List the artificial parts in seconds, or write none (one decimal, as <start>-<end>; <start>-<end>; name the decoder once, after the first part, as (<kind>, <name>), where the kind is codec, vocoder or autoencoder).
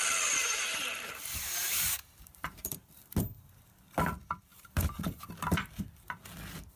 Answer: 0.4-2.9 (vocoder, BigVGAN v2); 4.5-5.3